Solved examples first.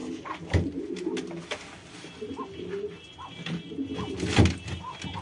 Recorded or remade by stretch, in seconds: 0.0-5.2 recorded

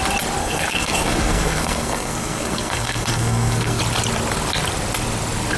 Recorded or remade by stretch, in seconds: 0.0-0.4 recorded; 0.4-3.8 remade; 3.8-5.6 recorded